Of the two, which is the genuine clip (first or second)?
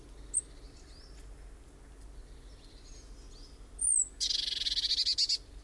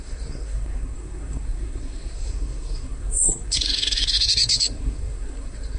first